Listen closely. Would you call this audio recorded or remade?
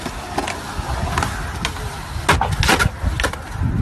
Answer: recorded